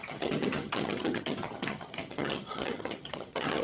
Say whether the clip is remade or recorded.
remade